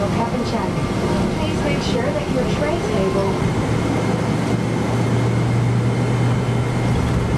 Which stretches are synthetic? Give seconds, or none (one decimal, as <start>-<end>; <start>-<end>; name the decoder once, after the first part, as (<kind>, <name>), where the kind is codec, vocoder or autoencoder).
none